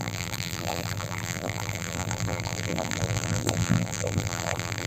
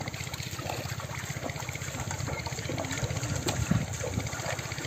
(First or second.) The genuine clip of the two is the second